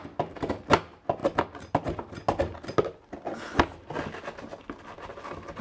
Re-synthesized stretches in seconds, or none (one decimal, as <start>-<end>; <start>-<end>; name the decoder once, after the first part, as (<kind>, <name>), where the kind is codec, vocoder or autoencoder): none